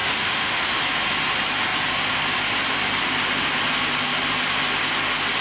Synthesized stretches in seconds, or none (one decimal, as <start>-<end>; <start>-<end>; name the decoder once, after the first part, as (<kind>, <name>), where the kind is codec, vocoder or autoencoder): 0.0-0.8 (autoencoder, DAC-VAE)